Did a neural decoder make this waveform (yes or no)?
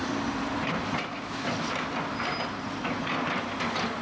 no